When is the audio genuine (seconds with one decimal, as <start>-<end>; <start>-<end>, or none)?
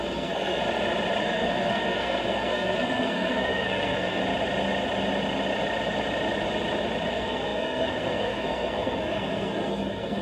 0.6-1.2; 4.2-7.1